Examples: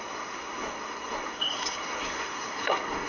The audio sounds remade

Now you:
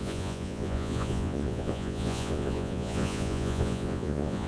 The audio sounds remade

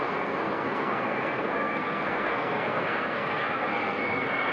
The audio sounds remade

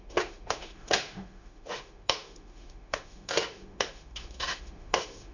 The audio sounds remade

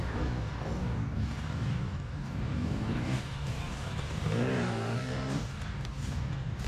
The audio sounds remade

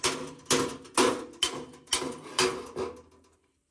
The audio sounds recorded